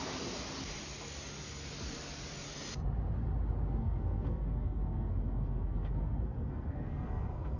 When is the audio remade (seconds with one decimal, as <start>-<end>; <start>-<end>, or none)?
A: 3.8-7.6